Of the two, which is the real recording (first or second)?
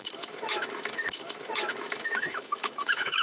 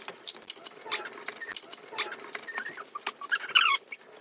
second